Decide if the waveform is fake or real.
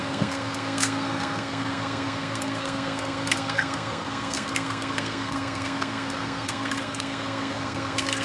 fake